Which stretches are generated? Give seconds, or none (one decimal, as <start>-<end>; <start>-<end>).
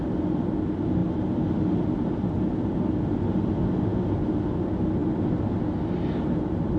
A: none